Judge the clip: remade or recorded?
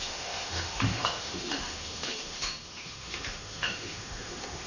remade